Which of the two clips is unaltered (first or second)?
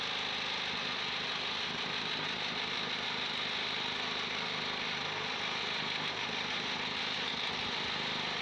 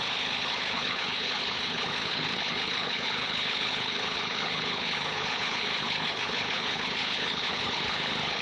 first